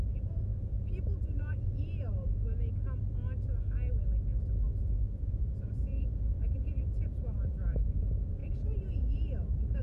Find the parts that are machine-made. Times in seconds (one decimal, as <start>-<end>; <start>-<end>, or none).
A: 0.0-2.5; 5.2-9.8